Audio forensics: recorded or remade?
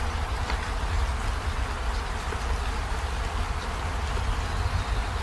recorded